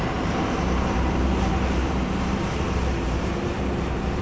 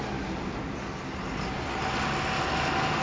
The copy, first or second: first